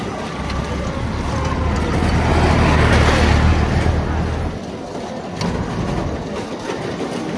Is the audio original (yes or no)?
yes